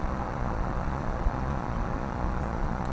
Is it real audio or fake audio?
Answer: fake